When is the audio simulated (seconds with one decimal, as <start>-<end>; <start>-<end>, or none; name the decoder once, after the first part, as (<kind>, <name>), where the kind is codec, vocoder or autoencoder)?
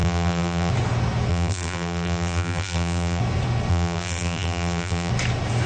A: 0.0-0.7 (vocoder, BigVGAN v2); 1.3-3.2; 3.7-5.1